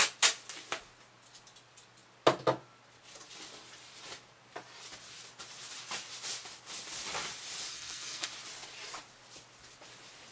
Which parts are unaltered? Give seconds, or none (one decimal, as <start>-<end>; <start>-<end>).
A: 0.0-7.7; 8.3-10.3